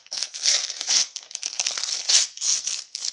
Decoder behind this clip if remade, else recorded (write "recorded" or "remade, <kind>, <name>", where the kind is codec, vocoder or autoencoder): remade, codec, SNAC